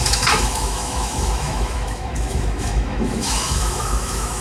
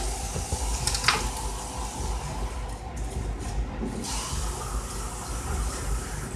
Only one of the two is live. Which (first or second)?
second